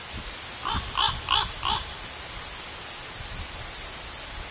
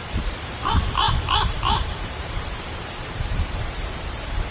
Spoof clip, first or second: second